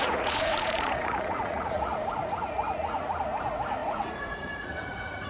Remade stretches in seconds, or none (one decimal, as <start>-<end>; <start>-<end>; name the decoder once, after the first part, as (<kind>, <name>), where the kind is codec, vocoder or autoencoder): 0.0-3.2 (vocoder, Vocos); 3.8-5.3

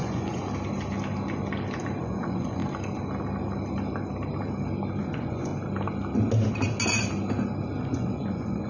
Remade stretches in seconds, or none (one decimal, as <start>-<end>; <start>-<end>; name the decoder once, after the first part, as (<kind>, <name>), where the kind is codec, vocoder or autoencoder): 0.0-0.4 (vocoder, Vocos); 2.0-2.6; 5.0-5.5; 7.8-8.7